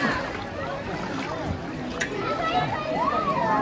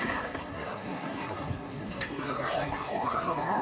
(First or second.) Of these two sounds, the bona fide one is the first